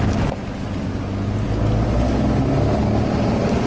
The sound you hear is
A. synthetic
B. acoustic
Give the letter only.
B